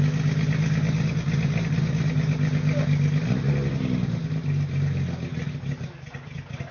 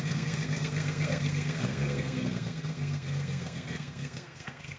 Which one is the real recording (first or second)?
first